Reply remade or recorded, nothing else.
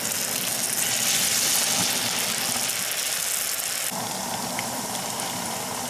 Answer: recorded